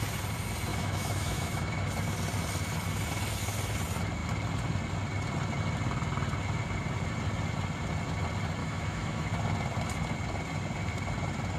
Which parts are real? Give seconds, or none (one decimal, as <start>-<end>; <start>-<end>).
0.0-0.7; 1.8-8.6; 9.3-11.6